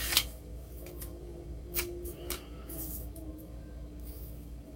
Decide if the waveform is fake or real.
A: fake